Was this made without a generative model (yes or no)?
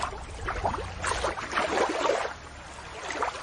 yes